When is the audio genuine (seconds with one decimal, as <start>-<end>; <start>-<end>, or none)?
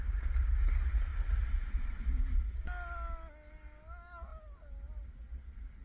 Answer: 0.0-5.8